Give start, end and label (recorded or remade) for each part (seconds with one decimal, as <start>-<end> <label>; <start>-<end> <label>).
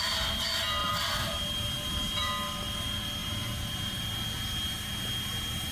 0.0-0.8 recorded; 0.8-2.3 remade; 2.3-3.2 recorded; 3.2-4.0 remade; 4.0-5.7 recorded